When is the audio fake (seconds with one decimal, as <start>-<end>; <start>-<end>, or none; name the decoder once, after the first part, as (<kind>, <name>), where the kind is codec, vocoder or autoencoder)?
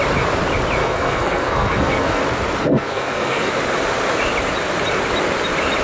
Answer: 0.8-2.2 (codec, SNAC); 2.6-3.5